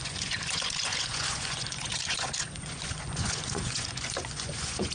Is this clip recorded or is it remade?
remade